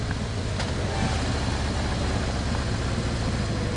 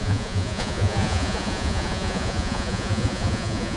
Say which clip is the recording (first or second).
first